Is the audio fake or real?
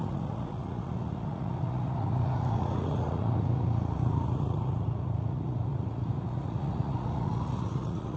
fake